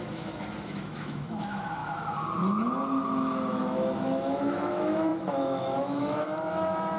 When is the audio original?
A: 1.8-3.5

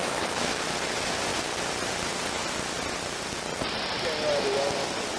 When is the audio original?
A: 0.6-5.2

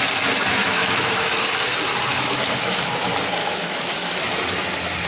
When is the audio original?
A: 0.0-0.6; 1.3-2.1; 3.0-3.4; 4.1-5.1

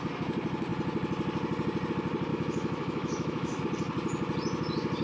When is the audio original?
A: 0.0-2.3; 3.6-5.0